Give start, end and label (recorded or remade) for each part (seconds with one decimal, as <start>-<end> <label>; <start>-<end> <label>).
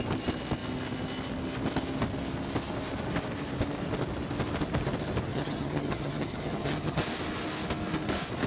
0.0-5.3 recorded; 5.3-7.0 remade; 7.0-8.5 recorded